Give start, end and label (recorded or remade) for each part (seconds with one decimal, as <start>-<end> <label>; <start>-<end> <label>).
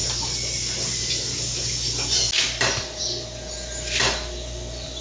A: 0.0-5.0 recorded